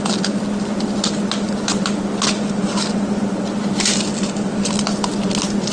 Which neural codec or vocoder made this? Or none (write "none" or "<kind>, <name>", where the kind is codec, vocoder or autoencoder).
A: none